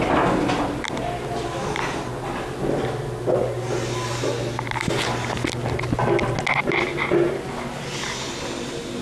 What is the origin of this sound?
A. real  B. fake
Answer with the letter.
A